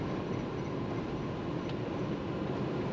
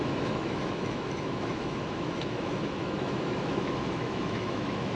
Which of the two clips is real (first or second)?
first